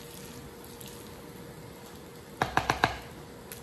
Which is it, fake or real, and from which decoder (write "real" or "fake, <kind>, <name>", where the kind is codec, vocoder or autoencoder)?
real